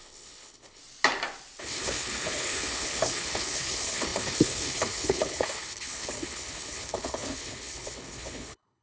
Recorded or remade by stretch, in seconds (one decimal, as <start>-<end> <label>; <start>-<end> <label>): 0.0-0.8 remade; 0.8-1.6 recorded; 1.6-8.8 remade